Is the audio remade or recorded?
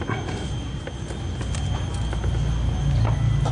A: recorded